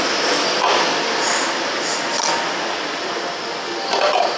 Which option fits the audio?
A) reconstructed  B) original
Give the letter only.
B